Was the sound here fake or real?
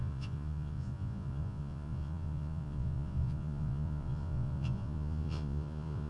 fake